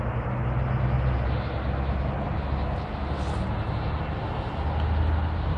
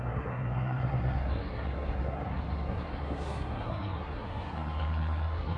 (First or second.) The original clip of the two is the first